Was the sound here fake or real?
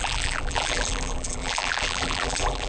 fake